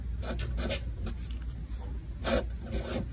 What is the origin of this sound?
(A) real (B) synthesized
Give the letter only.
A